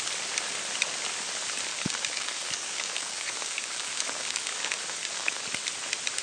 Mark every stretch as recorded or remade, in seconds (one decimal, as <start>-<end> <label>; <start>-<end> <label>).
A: 0.0-1.7 recorded; 1.7-5.4 remade; 5.4-6.2 recorded